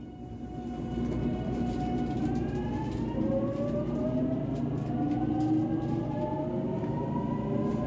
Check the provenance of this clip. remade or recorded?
recorded